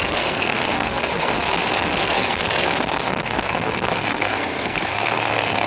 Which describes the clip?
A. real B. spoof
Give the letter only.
B